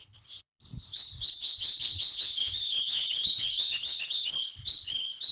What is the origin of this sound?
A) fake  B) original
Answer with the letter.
A